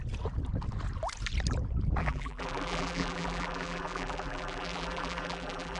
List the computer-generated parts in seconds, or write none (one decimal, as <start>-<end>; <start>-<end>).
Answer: 2.0-5.8